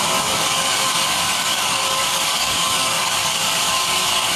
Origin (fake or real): fake